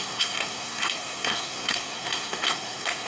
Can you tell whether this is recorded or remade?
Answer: remade